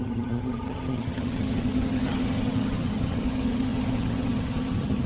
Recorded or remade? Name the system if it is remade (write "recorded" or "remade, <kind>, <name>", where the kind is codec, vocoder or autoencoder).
remade, vocoder, HiFi-GAN